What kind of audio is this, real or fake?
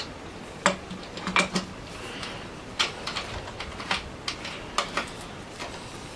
real